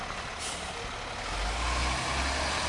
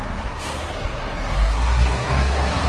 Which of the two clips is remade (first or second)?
second